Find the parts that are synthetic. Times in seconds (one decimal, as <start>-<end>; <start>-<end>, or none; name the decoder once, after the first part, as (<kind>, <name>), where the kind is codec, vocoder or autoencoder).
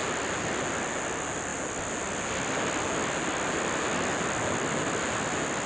none